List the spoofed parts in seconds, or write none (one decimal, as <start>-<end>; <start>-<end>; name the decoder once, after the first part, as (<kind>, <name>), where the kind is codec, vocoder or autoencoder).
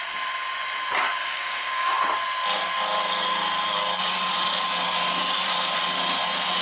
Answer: 1.2-2.0 (codec, DAC)